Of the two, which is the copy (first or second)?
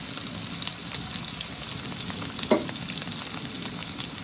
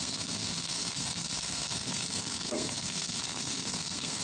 second